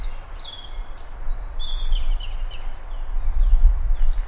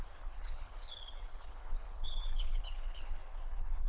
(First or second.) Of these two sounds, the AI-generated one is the second